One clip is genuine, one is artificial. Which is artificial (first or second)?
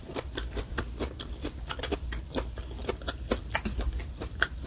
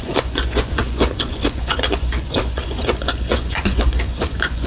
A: second